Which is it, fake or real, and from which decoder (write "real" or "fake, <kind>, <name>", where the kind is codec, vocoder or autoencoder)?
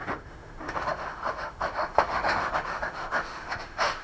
fake, autoencoder, DAC-VAE